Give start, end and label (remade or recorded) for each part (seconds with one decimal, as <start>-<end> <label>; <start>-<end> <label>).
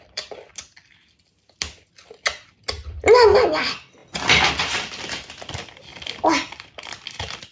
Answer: 0.0-0.5 remade; 0.5-3.6 recorded; 3.6-4.0 remade; 4.0-4.5 recorded; 4.5-5.9 remade; 5.9-6.8 recorded; 6.8-7.5 remade